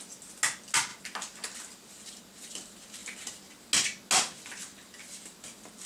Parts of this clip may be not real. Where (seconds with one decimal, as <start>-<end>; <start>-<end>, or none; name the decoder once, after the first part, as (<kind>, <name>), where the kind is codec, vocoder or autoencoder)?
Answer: none